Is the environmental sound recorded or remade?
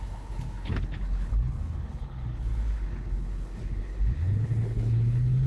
remade